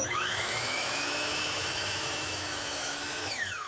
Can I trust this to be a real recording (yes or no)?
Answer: no